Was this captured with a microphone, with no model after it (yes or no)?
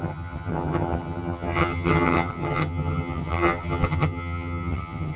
no